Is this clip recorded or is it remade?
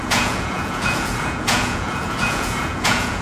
remade